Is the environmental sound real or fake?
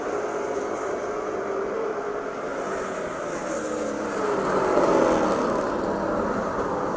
real